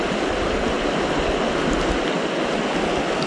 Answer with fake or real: real